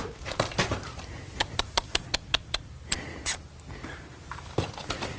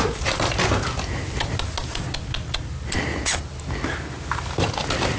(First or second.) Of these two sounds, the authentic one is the second